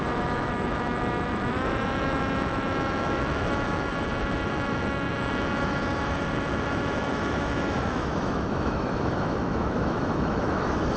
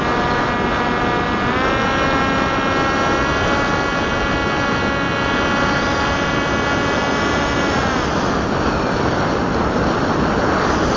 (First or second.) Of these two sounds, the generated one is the first